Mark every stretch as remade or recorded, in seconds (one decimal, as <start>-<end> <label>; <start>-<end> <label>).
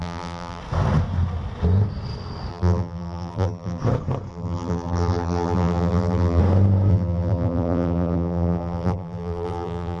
0.0-0.6 remade; 0.6-2.5 recorded; 2.5-3.8 remade; 3.8-4.3 recorded; 4.3-6.4 remade; 6.4-6.9 recorded; 6.9-10.0 remade